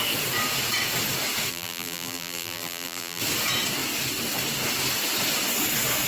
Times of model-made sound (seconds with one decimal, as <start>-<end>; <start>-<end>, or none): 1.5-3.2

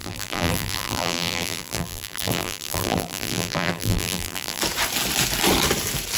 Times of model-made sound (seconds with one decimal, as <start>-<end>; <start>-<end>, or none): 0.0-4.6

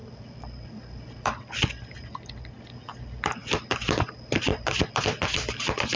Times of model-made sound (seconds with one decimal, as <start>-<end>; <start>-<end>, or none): 0.0-2.1; 3.4-4.1; 4.5-5.0

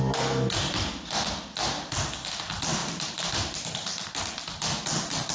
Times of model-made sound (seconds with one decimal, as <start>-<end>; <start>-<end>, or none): 2.8-4.1

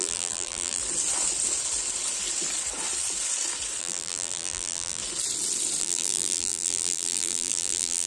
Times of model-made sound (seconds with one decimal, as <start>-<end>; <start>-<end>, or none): 0.0-0.8; 3.8-5.0; 5.8-8.1

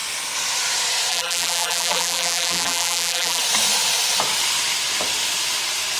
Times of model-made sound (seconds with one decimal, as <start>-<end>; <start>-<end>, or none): 1.1-3.4

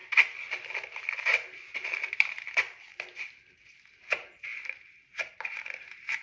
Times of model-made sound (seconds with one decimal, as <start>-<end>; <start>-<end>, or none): 0.7-2.9; 4.0-6.2

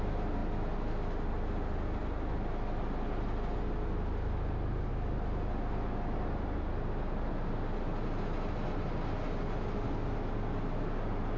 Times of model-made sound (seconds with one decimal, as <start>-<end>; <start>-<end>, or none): none